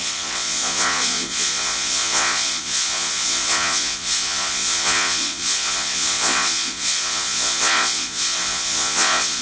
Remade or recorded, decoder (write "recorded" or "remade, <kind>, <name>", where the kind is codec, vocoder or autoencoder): remade, vocoder, Vocos